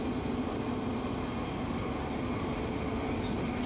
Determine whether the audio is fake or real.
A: real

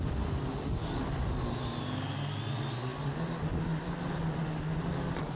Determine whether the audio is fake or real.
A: real